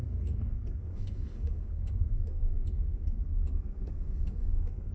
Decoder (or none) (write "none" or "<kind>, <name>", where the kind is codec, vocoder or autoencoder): codec, SNAC